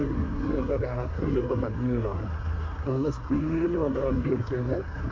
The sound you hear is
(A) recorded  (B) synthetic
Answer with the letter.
B